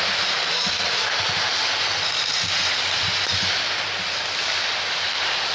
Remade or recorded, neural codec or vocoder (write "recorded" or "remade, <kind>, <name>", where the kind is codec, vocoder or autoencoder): recorded